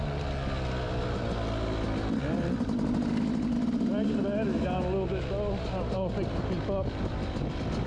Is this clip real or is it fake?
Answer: real